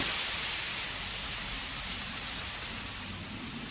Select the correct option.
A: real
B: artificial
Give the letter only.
A